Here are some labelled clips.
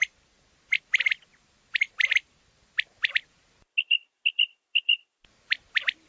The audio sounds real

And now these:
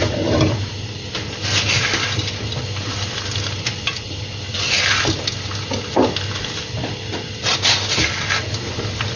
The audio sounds real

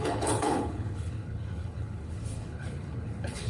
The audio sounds fake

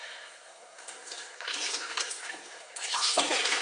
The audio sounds fake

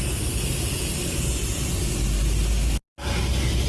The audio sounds real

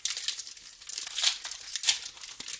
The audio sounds real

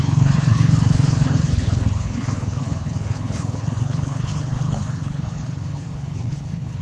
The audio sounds fake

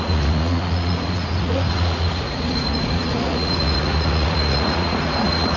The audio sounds fake